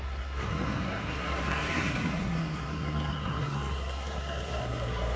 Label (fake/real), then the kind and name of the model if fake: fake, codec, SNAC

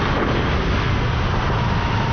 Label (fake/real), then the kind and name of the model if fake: real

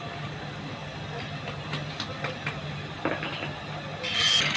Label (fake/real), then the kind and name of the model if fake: real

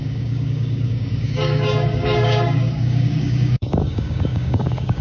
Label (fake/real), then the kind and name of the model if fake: fake, codec, DAC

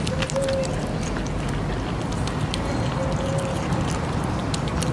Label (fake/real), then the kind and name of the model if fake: real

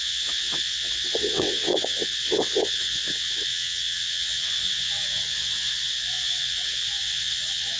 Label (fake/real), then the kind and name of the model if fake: fake, vocoder, WaveNeXt